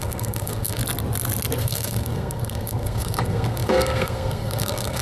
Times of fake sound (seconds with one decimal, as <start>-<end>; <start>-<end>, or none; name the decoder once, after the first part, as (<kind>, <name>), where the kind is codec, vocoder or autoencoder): 0.0-0.8 (codec, SNAC); 1.6-5.0